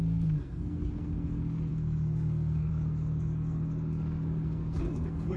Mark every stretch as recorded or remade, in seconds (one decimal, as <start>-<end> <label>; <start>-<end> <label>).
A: 0.0-5.4 remade